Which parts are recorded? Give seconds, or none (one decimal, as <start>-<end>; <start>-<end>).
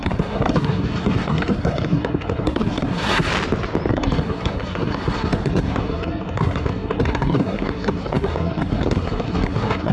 3.3-3.9